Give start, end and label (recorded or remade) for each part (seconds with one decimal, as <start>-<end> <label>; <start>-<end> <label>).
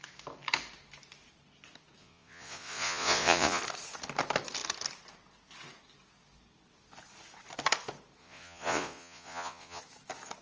0.0-2.0 recorded; 2.0-3.6 remade; 3.6-8.2 recorded; 8.2-9.8 remade; 9.8-10.4 recorded